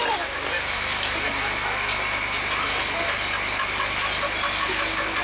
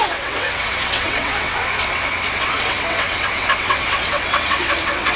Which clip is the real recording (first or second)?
first